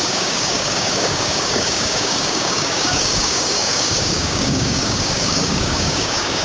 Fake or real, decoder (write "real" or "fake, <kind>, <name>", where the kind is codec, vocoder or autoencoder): fake, codec, DAC